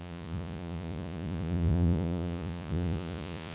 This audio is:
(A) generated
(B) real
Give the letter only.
A